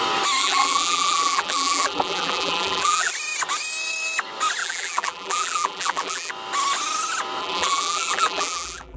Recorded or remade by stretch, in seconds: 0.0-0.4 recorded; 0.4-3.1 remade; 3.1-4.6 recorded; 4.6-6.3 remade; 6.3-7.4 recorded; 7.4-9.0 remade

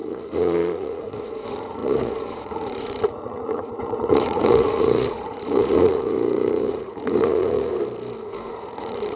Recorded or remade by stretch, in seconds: 0.0-7.7 remade; 7.7-8.2 recorded; 8.2-9.2 remade

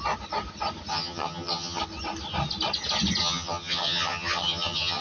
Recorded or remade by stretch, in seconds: 0.0-0.9 recorded; 0.9-1.8 remade; 1.8-3.2 recorded; 3.2-5.0 remade